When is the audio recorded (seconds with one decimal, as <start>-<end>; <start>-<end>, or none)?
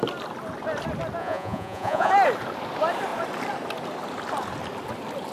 0.0-1.2; 2.1-5.3